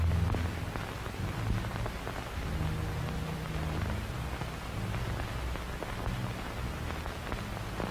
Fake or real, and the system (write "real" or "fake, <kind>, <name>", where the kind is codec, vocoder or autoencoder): real